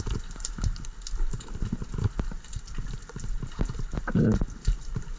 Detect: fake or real real